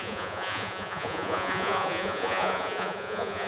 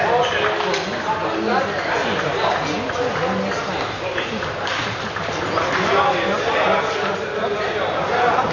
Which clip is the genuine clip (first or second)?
second